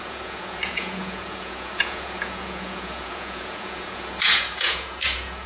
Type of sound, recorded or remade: remade